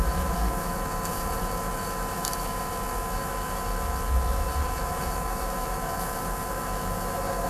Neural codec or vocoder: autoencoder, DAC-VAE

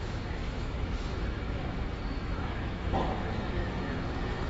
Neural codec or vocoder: autoencoder, DAC-VAE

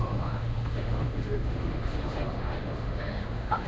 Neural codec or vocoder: autoencoder, DAC-VAE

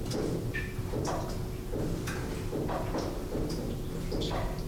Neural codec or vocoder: none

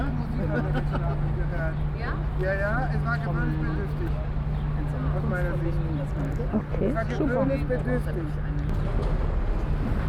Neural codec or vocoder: none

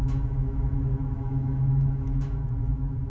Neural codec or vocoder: autoencoder, DAC-VAE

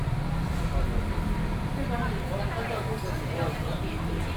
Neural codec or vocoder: none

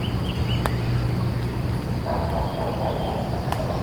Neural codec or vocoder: none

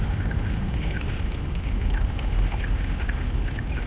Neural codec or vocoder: autoencoder, DAC-VAE